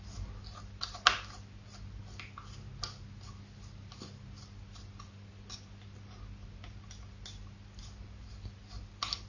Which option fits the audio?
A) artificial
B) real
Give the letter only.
B